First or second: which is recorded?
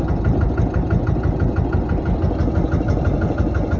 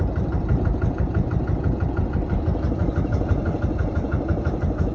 first